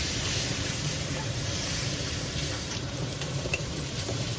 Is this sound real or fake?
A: fake